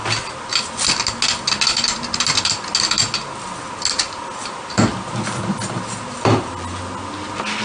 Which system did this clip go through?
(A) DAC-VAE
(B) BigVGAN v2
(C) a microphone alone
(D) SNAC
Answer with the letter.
C